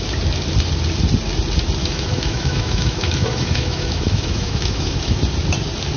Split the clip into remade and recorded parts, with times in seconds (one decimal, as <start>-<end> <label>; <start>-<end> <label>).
0.0-1.8 recorded; 1.8-5.2 remade; 5.2-6.0 recorded